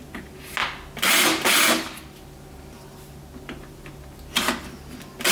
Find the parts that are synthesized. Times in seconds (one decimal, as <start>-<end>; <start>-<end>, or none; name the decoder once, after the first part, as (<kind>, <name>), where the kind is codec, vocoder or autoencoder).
none